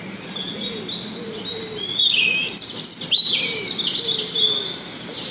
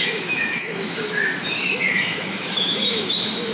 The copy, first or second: second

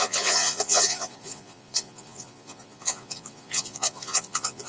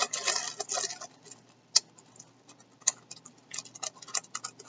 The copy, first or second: first